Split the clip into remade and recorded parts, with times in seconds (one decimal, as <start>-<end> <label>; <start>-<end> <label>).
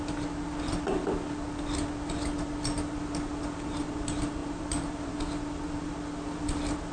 0.0-4.4 recorded; 4.4-5.1 remade; 5.1-6.9 recorded